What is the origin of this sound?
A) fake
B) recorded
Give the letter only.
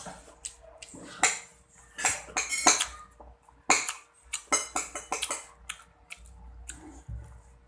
B